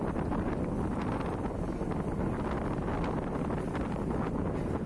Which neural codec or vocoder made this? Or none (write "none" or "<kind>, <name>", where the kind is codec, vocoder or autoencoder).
none